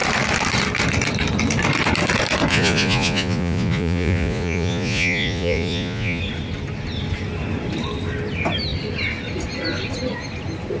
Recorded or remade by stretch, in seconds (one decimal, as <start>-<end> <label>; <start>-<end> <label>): 0.0-2.5 recorded; 2.5-6.2 remade; 6.2-10.8 recorded